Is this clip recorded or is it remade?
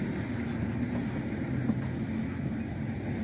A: recorded